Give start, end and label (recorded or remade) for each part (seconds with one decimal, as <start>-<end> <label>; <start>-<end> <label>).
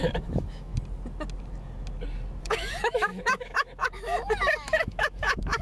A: 0.0-0.7 remade; 0.7-2.4 recorded; 2.4-5.6 remade